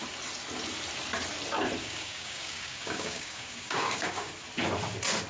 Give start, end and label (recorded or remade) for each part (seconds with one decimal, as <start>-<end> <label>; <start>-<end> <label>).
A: 0.0-1.8 recorded; 1.8-4.3 remade; 4.3-5.3 recorded